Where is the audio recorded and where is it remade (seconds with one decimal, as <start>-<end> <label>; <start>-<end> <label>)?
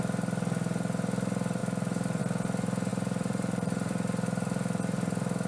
0.0-2.9 recorded; 2.9-5.5 remade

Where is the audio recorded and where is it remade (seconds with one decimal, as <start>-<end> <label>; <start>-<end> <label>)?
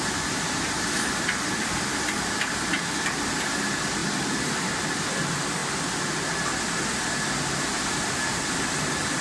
0.0-4.0 recorded; 4.0-4.7 remade; 4.7-9.2 recorded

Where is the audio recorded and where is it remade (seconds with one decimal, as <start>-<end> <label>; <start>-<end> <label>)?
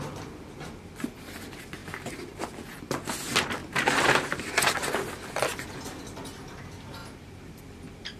0.0-3.6 recorded; 3.6-4.5 remade; 4.5-7.0 recorded; 7.0-7.6 remade; 7.6-8.2 recorded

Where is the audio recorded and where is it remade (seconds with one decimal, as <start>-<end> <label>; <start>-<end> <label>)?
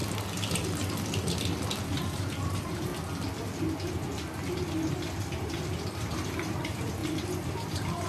0.0-1.9 recorded; 1.9-2.9 remade; 2.9-5.4 recorded; 5.4-7.0 remade; 7.0-7.5 recorded; 7.5-8.1 remade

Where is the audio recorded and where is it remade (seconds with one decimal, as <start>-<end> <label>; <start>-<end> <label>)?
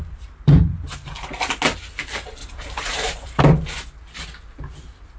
0.0-1.6 remade; 1.6-2.4 recorded; 2.4-3.4 remade; 3.4-5.2 recorded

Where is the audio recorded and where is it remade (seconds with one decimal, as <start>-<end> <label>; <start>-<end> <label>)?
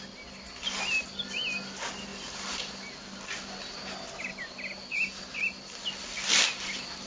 0.0-7.1 recorded